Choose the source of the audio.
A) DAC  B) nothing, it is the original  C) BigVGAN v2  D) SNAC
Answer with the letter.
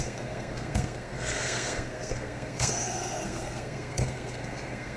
D